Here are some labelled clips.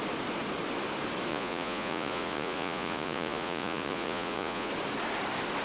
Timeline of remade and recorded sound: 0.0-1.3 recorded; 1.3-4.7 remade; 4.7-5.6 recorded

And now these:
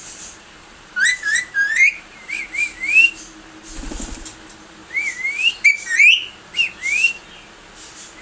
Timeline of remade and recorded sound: 0.0-3.2 remade; 3.2-8.2 recorded

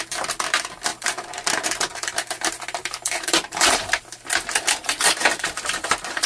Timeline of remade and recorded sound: 0.0-0.9 recorded; 0.9-2.1 remade; 2.1-2.8 recorded; 2.8-4.0 remade; 4.0-4.8 recorded; 4.8-6.3 remade

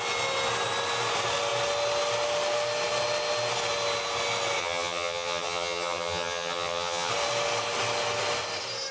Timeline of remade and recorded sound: 0.0-4.6 recorded; 4.6-7.1 remade; 7.1-8.9 recorded

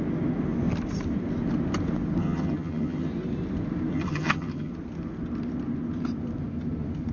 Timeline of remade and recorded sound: 0.0-2.2 recorded; 2.2-3.1 remade; 3.1-3.9 recorded; 3.9-4.7 remade; 4.7-7.1 recorded

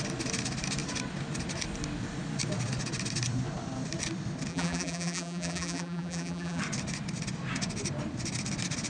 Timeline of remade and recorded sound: 0.0-4.5 recorded; 4.5-6.6 remade; 6.6-8.9 recorded

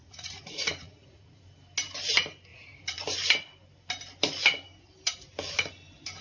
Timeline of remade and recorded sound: 0.0-1.4 remade; 1.4-2.5 recorded; 2.5-3.0 remade; 3.0-6.2 recorded

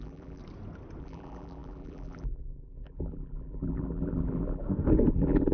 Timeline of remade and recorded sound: 0.0-0.4 remade; 0.4-1.0 recorded; 1.0-4.6 remade; 4.6-5.1 recorded; 5.1-5.5 remade